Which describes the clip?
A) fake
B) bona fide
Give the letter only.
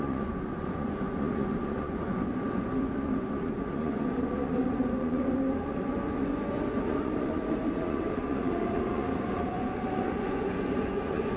A